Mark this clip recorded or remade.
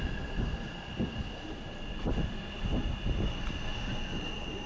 recorded